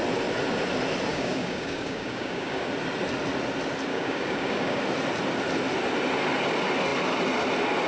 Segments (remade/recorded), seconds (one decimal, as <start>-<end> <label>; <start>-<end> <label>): 0.0-1.1 recorded; 1.1-2.7 remade; 2.7-3.9 recorded; 3.9-4.8 remade; 4.8-7.9 recorded